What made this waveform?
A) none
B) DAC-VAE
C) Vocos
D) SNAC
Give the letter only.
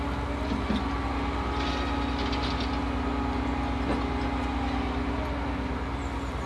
A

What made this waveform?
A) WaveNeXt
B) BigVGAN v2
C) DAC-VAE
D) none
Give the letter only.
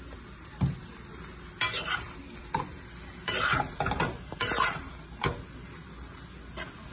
D